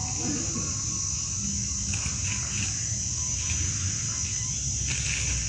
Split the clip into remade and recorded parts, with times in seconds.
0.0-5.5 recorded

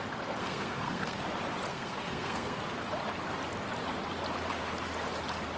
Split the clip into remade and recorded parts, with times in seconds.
0.0-0.4 recorded; 0.4-1.2 remade; 1.2-1.7 recorded; 1.7-2.6 remade; 2.6-5.6 recorded

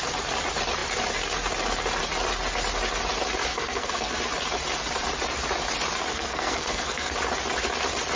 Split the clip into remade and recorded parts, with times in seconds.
0.0-3.5 recorded; 3.5-4.2 remade; 4.2-6.1 recorded; 6.1-7.1 remade; 7.1-8.2 recorded

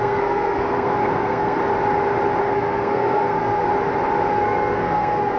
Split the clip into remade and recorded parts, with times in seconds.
0.0-1.6 remade; 1.6-2.4 recorded; 2.4-3.7 remade; 3.7-4.3 recorded; 4.3-5.4 remade

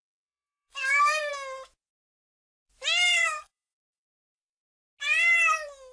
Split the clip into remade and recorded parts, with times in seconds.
0.0-1.3 remade; 1.3-3.1 recorded; 3.1-4.4 remade; 4.4-5.9 recorded

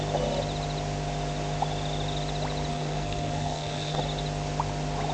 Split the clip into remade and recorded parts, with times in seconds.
0.0-2.7 recorded; 2.7-4.0 remade; 4.0-5.1 recorded